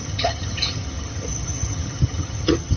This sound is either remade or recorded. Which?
remade